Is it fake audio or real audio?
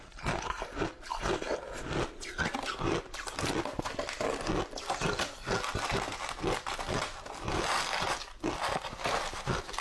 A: real